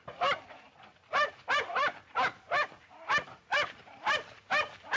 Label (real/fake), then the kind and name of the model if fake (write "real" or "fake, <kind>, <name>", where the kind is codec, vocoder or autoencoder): fake, vocoder, BigVGAN v2